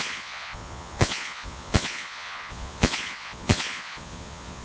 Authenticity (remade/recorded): remade